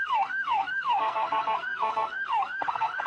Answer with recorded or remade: remade